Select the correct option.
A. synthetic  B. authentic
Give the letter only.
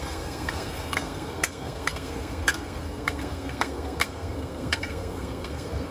A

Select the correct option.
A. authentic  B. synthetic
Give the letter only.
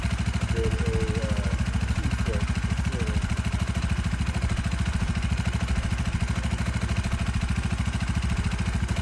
A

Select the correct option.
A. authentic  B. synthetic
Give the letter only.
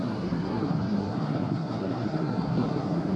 B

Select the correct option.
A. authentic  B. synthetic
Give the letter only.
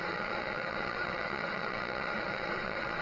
B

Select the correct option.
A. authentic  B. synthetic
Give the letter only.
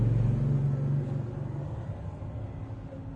A